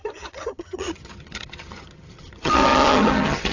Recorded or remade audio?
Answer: remade